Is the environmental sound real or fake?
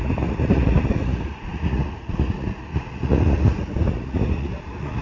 fake